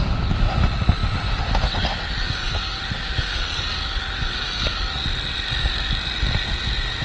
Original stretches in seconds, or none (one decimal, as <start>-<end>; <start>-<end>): 0.0-7.0